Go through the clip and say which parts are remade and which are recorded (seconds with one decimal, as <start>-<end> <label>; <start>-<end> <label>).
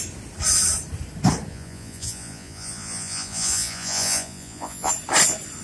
0.0-1.5 recorded; 1.5-4.9 remade; 4.9-5.6 recorded